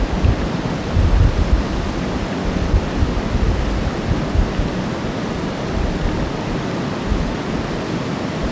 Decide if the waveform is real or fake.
real